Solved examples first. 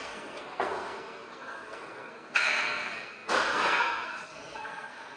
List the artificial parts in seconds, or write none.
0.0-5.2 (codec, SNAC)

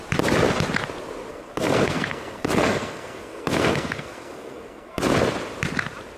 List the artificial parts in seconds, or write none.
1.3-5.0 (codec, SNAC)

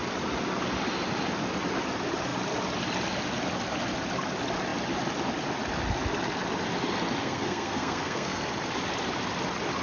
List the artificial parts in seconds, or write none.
7.2-8.4 (codec, SNAC)